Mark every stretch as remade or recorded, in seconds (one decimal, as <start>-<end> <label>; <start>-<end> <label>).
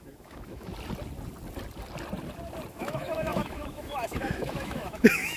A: 0.0-0.7 remade; 0.7-2.7 recorded; 2.7-5.4 remade